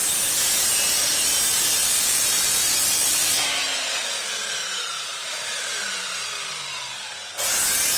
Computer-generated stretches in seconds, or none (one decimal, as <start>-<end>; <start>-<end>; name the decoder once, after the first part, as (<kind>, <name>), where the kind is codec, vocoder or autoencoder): 4.0-6.4 (vocoder, BigVGAN v2)